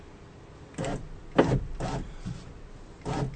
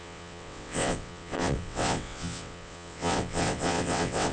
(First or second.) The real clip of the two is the first